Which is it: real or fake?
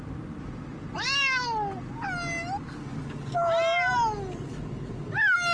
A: real